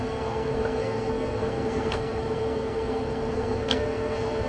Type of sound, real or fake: fake